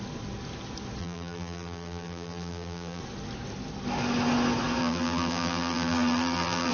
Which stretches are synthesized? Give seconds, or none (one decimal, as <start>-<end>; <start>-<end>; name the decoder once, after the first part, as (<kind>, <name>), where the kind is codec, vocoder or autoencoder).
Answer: 1.0-3.0 (vocoder, BigVGAN v2); 4.8-6.7